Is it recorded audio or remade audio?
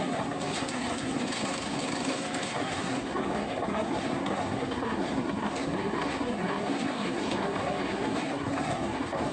remade